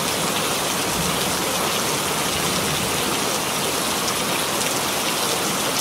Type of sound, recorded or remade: recorded